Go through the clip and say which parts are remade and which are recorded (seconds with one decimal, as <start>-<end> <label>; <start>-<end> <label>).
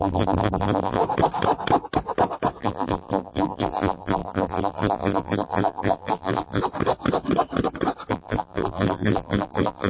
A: 0.0-1.0 remade; 1.0-2.6 recorded; 2.6-6.6 remade; 6.6-8.1 recorded; 8.1-9.9 remade